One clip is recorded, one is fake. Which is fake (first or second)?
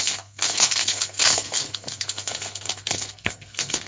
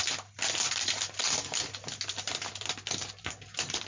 first